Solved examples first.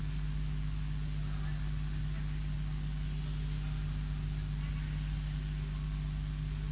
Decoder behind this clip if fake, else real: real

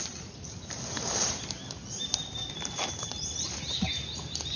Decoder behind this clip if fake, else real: real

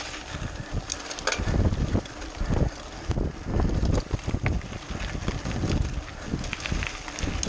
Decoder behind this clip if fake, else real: real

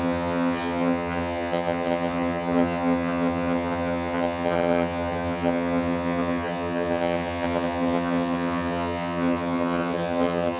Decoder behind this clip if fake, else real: fake, vocoder, HiFi-GAN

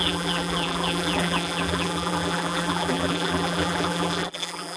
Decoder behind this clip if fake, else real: fake, vocoder, BigVGAN v2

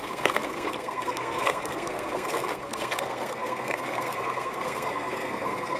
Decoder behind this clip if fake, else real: fake, codec, SNAC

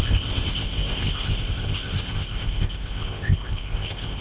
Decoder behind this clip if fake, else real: fake, codec, ZipCodec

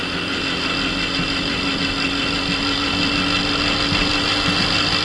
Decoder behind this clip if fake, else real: real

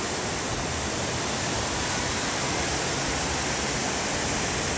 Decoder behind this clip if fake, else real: real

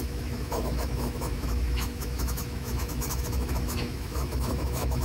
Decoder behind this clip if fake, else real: fake, autoencoder, DAC-VAE